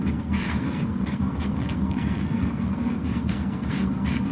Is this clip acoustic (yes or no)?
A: no